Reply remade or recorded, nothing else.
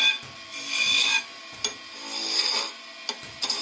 recorded